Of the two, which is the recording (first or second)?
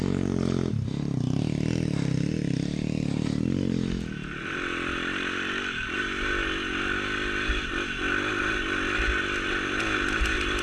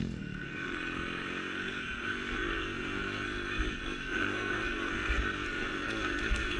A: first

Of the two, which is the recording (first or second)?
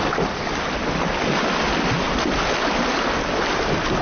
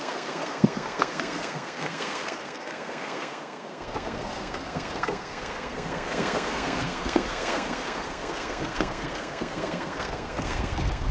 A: first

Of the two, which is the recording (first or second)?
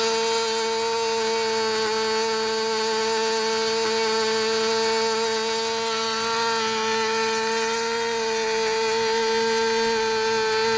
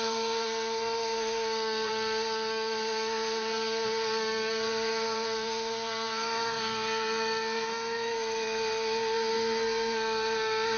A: first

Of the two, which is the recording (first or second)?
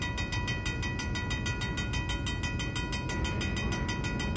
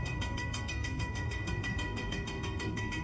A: first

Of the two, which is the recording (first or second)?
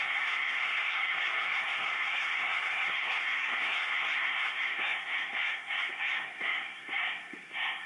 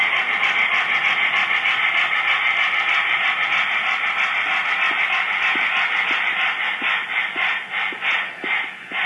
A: second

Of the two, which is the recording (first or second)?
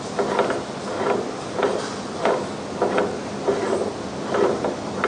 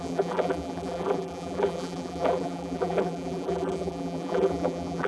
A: first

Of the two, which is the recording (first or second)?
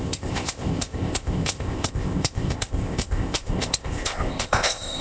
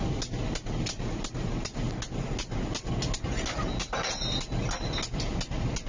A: second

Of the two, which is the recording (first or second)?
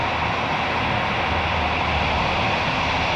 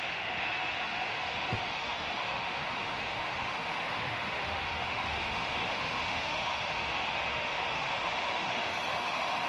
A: first